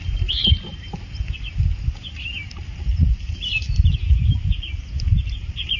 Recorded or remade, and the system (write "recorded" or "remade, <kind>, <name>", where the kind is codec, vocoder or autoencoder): recorded